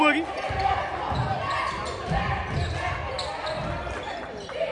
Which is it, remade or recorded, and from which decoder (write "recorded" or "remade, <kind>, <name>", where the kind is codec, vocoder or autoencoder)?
recorded